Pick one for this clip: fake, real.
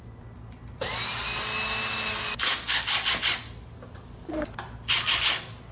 real